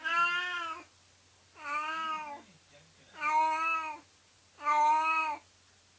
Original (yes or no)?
yes